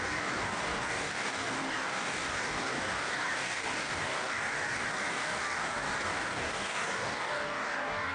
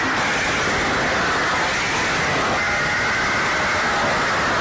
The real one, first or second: second